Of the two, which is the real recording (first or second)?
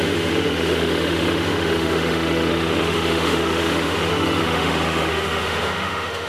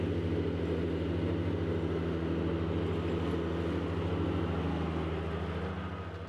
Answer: second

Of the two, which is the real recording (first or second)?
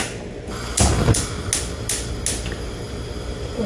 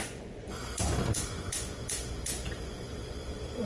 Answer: first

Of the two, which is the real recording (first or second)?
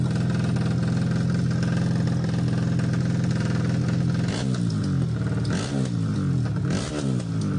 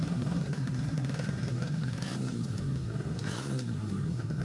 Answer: first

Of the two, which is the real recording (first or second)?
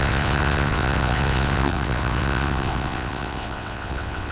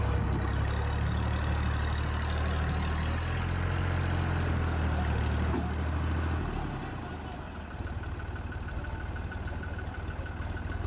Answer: second